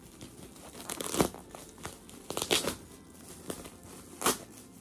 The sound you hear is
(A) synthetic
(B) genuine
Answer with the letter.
B